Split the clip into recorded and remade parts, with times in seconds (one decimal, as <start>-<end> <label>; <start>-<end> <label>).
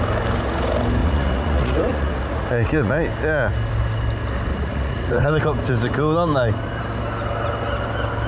0.0-1.0 recorded; 1.0-2.9 remade; 2.9-4.5 recorded; 4.5-5.4 remade; 5.4-8.3 recorded